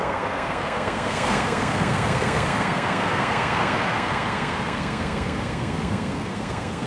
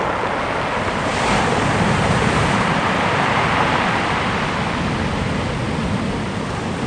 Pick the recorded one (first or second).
second